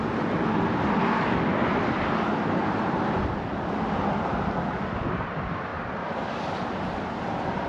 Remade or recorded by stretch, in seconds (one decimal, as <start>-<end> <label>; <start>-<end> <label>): 0.0-5.7 recorded; 5.7-7.2 remade; 7.2-7.7 recorded